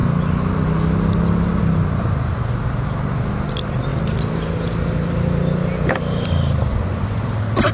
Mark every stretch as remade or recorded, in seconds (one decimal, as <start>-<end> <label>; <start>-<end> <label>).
0.0-6.7 recorded; 6.7-7.2 remade; 7.2-7.7 recorded